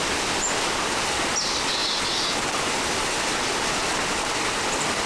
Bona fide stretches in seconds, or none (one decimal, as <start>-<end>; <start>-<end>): 0.0-5.1